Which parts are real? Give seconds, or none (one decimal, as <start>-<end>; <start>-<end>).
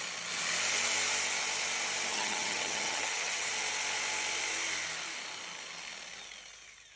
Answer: 0.0-2.1; 3.5-7.0